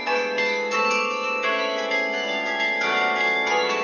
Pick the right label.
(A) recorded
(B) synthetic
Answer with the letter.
B